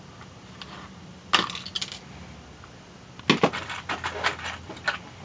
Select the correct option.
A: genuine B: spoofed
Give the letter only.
A